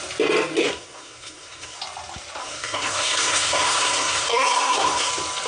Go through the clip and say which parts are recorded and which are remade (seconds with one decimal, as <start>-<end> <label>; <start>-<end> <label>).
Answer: 0.0-0.6 recorded; 0.6-1.8 remade; 1.8-2.4 recorded; 2.4-5.1 remade; 5.1-5.5 recorded